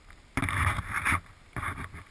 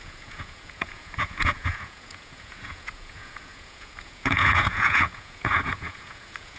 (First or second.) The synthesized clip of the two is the second